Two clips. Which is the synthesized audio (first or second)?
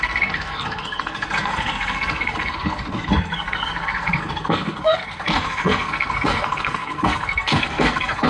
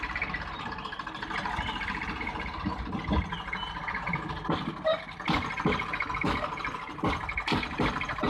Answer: first